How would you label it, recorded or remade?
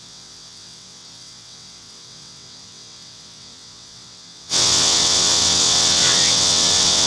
remade